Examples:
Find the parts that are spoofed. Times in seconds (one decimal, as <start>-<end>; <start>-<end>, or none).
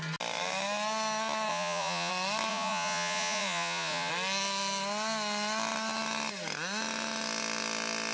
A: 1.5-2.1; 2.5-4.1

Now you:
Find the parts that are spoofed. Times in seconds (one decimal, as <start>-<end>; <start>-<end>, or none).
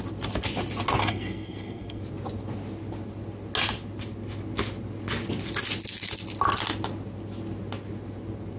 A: 1.0-2.0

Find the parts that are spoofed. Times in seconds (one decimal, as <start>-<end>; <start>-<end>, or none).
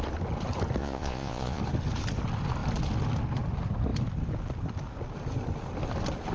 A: 0.8-1.6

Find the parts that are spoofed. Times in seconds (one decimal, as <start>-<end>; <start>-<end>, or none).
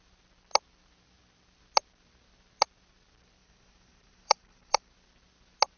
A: 3.4-4.9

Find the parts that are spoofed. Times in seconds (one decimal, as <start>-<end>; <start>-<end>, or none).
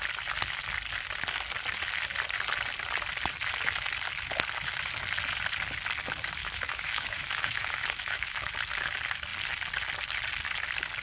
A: 6.4-8.5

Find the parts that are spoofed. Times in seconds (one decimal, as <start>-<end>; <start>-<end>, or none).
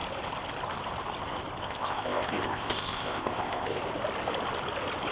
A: 1.6-3.8